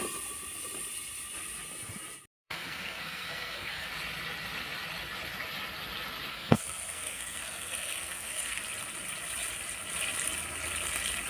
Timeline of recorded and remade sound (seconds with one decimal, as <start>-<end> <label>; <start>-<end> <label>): 0.0-2.4 recorded; 2.4-3.9 remade; 3.9-6.3 recorded; 6.3-8.6 remade; 8.6-11.3 recorded